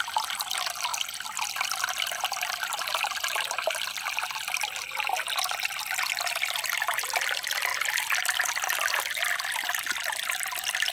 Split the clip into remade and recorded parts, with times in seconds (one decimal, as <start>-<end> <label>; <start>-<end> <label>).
0.0-10.9 recorded

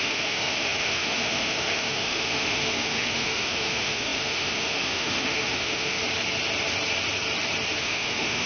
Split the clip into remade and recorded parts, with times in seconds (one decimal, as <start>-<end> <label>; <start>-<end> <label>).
0.0-6.0 remade; 6.0-7.8 recorded; 7.8-8.5 remade

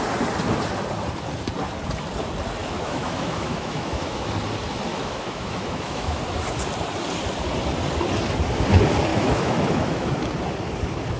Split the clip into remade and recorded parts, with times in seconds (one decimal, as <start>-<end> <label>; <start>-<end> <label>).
0.0-2.6 recorded; 2.6-4.3 remade; 4.3-4.9 recorded; 4.9-6.2 remade; 6.2-9.1 recorded; 9.1-10.1 remade; 10.1-11.2 recorded

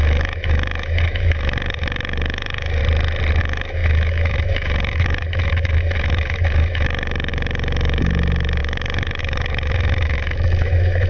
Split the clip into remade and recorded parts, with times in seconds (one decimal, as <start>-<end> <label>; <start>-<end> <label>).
0.0-2.8 remade; 2.8-3.4 recorded; 3.4-11.1 remade